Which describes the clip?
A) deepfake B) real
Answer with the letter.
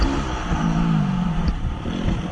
B